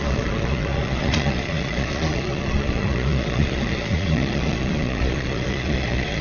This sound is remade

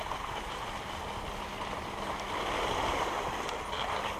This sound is recorded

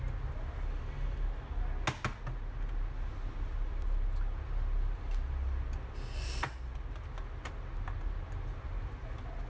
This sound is recorded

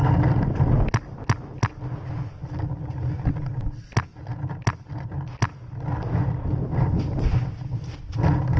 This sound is recorded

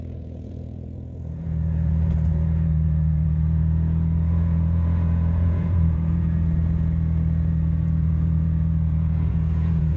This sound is remade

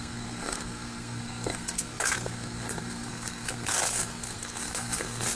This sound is remade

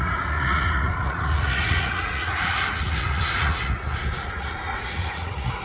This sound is remade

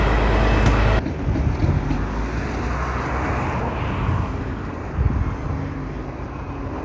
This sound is recorded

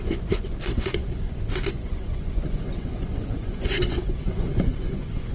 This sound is remade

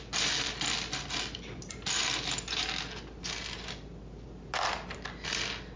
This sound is recorded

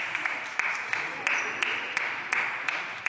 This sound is recorded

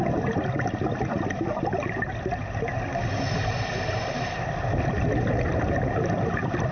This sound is recorded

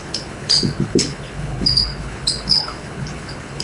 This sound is remade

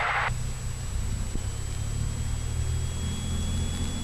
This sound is recorded